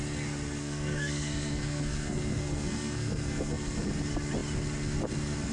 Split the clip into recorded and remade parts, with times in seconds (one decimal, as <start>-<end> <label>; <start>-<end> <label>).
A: 0.0-0.6 recorded; 0.6-3.9 remade; 3.9-5.5 recorded